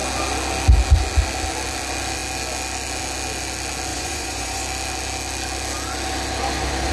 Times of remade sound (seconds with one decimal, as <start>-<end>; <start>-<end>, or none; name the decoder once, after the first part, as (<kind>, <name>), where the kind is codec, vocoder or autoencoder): 3.9-4.6 (vocoder, Vocos)